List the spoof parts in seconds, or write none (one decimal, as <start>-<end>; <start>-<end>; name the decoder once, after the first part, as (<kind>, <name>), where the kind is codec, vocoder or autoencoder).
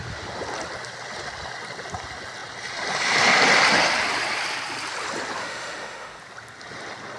5.4-6.2 (autoencoder, DAC-VAE)